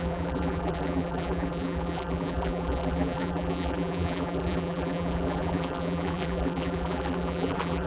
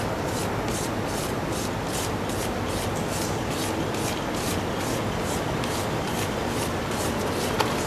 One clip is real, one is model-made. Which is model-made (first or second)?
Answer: first